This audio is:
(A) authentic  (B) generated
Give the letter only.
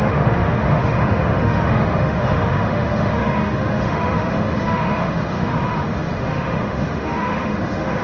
B